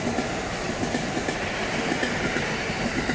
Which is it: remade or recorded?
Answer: recorded